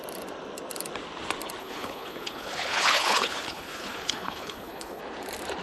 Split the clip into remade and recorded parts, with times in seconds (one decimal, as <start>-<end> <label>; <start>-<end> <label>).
0.0-1.6 recorded; 1.6-5.0 remade; 5.0-5.6 recorded